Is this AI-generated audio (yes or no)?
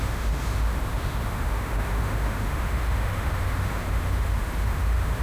yes